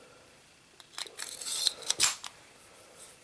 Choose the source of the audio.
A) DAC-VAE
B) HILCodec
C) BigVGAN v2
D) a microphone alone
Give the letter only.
D